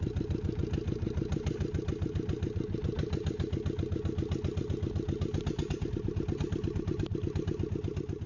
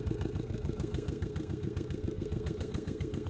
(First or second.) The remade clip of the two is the second